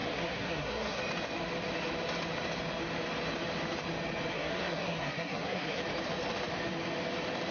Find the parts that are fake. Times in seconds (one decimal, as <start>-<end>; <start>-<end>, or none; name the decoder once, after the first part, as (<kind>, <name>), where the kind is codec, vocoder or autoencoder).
0.0-1.0 (codec, SNAC); 4.3-5.8